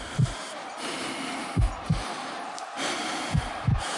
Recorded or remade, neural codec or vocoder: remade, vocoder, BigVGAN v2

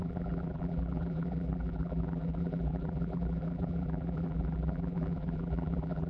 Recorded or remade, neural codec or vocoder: remade, vocoder, BigVGAN v2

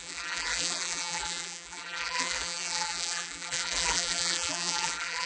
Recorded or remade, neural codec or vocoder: remade, vocoder, BigVGAN v2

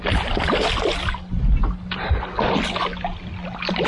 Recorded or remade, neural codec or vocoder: recorded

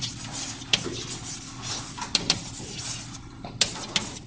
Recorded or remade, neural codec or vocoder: recorded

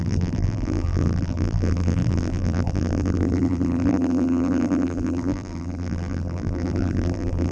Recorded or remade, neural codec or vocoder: remade, vocoder, BigVGAN v2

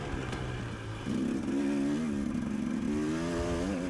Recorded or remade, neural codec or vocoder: recorded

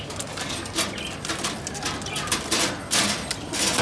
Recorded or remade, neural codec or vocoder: recorded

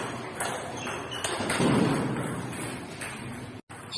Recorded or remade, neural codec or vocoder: recorded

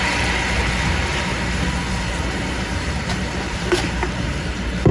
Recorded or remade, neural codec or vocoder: remade, vocoder, BigVGAN v2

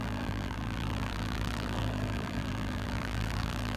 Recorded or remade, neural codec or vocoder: remade, vocoder, BigVGAN v2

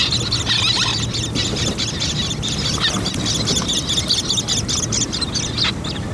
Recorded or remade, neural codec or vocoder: recorded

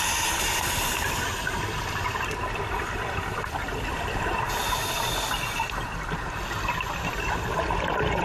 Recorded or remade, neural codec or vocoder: recorded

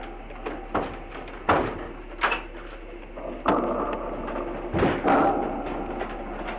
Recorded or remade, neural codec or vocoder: recorded